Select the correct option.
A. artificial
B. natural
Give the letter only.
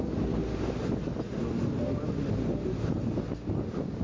B